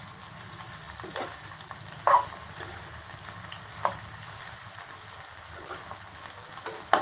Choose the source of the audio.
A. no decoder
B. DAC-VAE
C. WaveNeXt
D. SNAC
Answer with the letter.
A